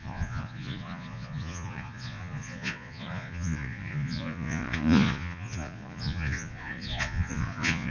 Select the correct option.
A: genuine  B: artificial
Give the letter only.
B